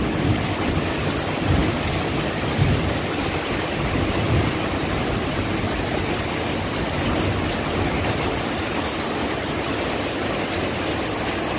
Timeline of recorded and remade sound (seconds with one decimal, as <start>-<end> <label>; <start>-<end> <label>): 0.0-1.6 recorded; 1.6-5.4 remade; 5.4-9.2 recorded; 9.2-9.8 remade; 9.8-11.6 recorded